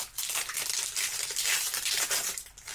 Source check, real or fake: real